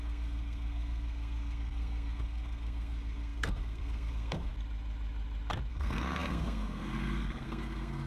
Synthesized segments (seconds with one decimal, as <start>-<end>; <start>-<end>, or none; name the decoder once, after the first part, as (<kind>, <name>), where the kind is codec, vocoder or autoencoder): 0.0-4.5 (codec, SNAC); 5.7-8.1